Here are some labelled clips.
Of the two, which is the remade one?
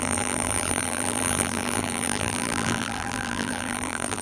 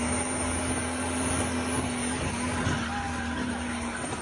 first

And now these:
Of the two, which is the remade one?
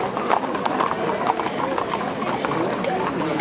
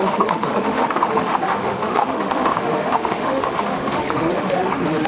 second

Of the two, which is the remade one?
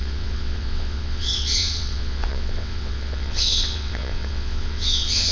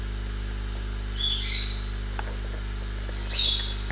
first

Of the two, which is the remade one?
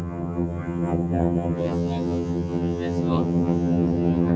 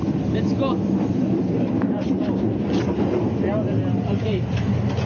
first